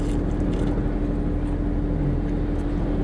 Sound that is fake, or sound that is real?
real